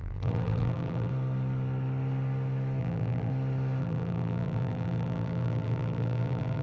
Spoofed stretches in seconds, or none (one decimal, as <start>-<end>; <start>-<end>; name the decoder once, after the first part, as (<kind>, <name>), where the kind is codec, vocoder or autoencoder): 0.0-1.1 (vocoder, BigVGAN v2); 2.8-3.3; 3.8-6.6